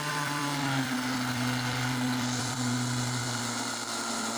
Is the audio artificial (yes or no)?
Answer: yes